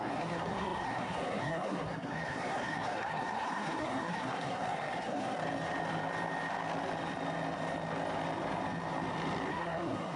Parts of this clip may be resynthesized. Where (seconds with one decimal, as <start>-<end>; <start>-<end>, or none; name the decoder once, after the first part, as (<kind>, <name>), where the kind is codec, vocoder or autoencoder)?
0.0-5.4 (codec, SNAC); 9.5-10.2